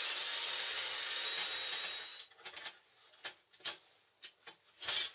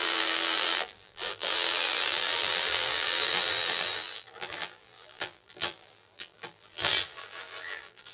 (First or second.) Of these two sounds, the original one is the first